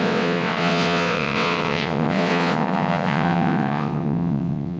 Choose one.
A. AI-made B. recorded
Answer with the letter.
A